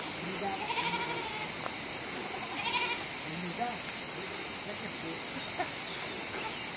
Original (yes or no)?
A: yes